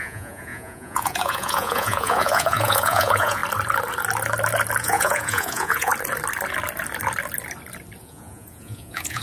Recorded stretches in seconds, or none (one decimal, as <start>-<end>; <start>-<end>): 3.4-4.8; 5.9-8.0